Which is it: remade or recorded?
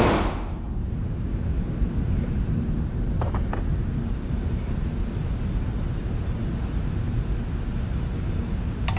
remade